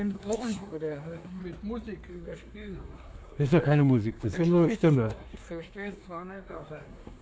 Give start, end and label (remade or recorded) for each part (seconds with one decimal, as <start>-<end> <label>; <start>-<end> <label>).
0.0-1.4 remade; 1.4-2.1 recorded; 2.1-7.2 remade